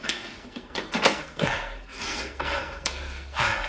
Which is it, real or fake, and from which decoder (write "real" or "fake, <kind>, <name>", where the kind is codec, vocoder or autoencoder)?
fake, codec, SNAC